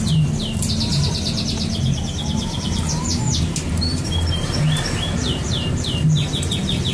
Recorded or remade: remade